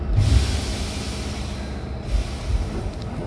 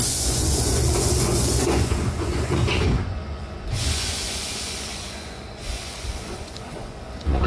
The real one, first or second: first